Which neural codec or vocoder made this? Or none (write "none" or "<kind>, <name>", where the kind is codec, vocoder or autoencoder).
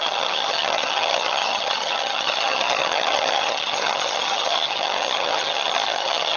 vocoder, HiFi-GAN